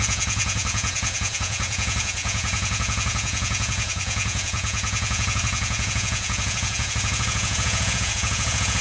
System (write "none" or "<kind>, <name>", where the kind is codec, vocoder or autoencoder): vocoder, Vocos